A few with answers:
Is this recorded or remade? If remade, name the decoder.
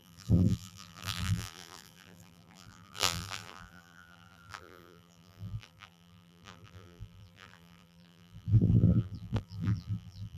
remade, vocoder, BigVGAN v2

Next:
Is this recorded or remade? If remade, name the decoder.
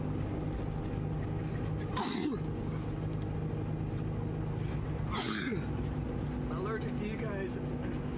recorded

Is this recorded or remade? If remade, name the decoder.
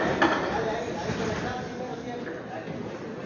recorded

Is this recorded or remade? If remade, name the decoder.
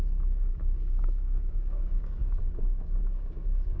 remade, codec, DAC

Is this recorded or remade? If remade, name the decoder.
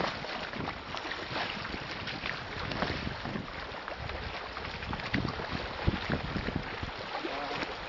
recorded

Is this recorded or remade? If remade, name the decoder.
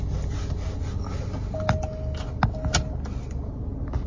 recorded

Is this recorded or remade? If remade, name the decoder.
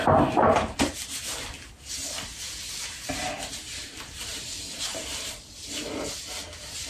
recorded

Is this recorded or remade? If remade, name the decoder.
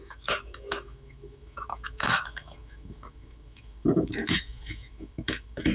remade, autoencoder, DAC-VAE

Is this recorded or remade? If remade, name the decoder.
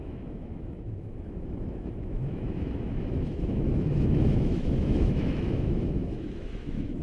remade, autoencoder, DAC-VAE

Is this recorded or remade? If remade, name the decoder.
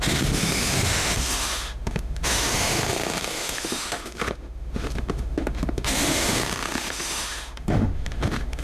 remade, autoencoder, DAC-VAE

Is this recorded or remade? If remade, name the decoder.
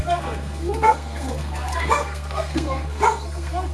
remade, codec, SNAC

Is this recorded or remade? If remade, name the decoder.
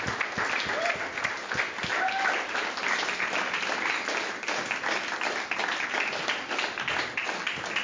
recorded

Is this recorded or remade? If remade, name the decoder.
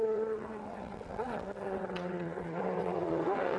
remade, vocoder, WaveNeXt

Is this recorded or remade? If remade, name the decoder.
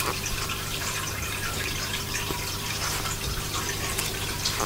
remade, vocoder, BigVGAN v2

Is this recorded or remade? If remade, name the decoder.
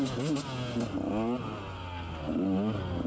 recorded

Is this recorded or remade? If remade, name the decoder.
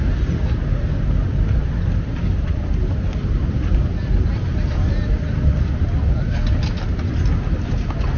recorded